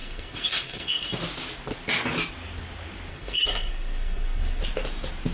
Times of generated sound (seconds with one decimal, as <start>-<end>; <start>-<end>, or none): 0.0-1.1; 3.1-4.6